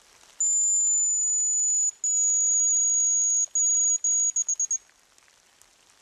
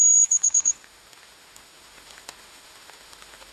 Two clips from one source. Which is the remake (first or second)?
second